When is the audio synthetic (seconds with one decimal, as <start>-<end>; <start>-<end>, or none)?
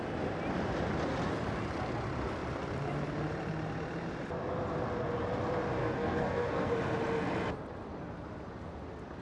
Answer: 5.8-6.7